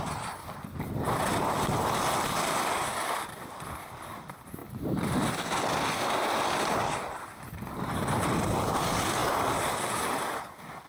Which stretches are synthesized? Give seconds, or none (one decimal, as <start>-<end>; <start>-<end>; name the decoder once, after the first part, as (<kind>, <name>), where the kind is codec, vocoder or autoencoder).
none